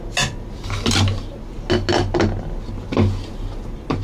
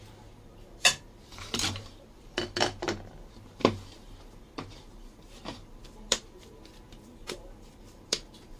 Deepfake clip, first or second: second